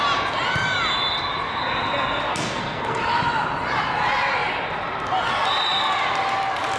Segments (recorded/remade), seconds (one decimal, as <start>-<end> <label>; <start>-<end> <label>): 0.0-2.3 recorded; 2.3-3.0 remade; 3.0-6.8 recorded